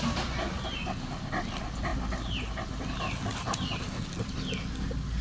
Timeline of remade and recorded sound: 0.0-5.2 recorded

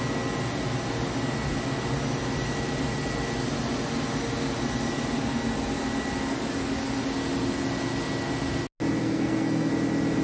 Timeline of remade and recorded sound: 0.0-9.0 recorded; 9.0-9.7 remade; 9.7-10.2 recorded

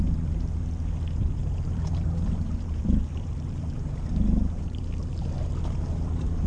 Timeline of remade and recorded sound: 0.0-1.4 recorded; 1.4-5.3 remade; 5.3-6.5 recorded

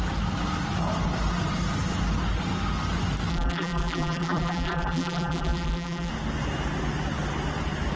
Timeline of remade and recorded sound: 0.0-3.3 recorded; 3.3-6.1 remade; 6.1-8.0 recorded

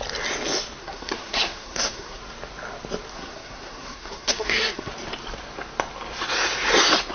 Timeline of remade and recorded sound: 0.0-0.8 recorded; 0.8-2.2 remade; 2.2-3.1 recorded; 3.1-4.9 remade; 4.9-7.1 recorded

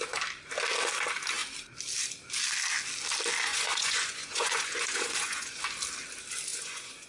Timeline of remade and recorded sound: 0.0-3.5 recorded; 3.5-5.6 remade; 5.6-6.5 recorded; 6.5-7.1 remade